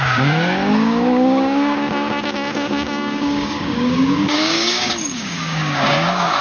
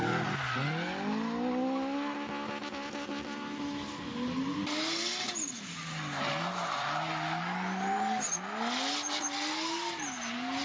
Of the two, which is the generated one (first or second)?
first